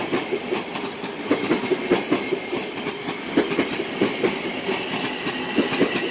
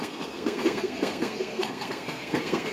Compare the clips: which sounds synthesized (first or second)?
second